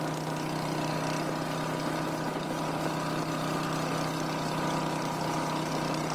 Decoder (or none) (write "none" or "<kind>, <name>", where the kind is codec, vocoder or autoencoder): none